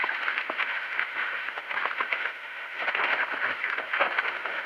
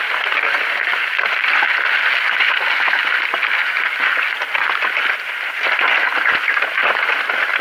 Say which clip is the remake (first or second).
first